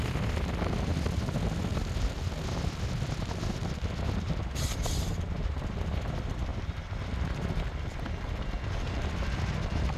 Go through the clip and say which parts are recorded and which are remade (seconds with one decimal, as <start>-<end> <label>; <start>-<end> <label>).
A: 0.0-10.0 recorded